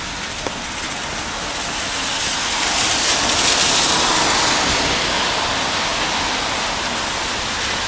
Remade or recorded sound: recorded